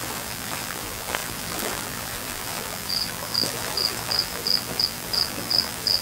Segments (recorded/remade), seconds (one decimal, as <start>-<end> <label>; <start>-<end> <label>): 0.0-6.0 remade